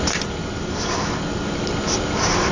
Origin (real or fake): real